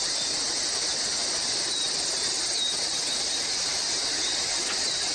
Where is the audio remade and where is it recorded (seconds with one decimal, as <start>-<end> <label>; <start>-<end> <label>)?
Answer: 0.0-1.2 recorded; 1.2-1.8 remade; 1.8-5.1 recorded

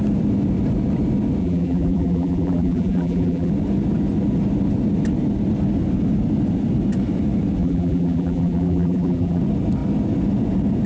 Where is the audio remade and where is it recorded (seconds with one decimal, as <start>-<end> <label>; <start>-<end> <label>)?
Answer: 0.0-1.4 recorded; 1.4-3.5 remade; 3.5-7.6 recorded; 7.6-9.4 remade; 9.4-10.9 recorded

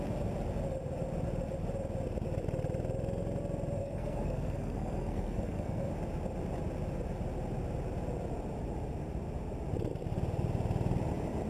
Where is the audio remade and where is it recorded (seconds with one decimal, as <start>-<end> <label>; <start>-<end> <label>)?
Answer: 0.0-3.8 recorded; 3.8-5.9 remade; 5.9-11.5 recorded

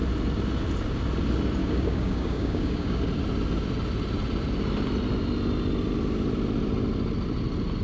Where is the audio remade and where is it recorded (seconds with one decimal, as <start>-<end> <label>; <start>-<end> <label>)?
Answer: 0.0-1.6 recorded; 1.6-3.0 remade; 3.0-7.8 recorded

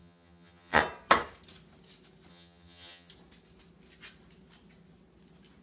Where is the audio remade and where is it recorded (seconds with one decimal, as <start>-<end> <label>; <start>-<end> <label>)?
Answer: 0.0-0.8 remade; 0.8-2.3 recorded; 2.3-3.1 remade; 3.1-5.6 recorded